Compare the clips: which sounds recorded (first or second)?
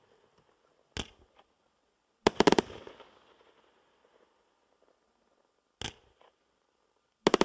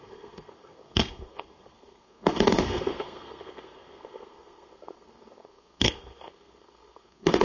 first